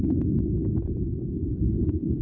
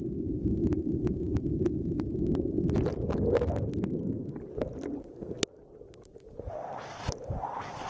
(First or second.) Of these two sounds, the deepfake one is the first